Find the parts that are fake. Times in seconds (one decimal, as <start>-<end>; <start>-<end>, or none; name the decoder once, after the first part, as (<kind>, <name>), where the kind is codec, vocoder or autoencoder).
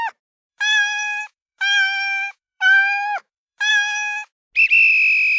0.5-3.7 (autoencoder, DAC-VAE)